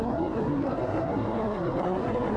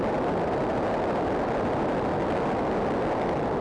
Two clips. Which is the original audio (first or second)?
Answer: second